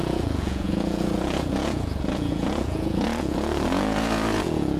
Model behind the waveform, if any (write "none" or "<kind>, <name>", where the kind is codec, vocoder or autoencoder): vocoder, Vocos